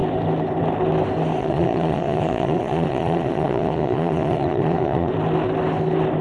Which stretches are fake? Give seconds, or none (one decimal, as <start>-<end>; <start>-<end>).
1.4-5.1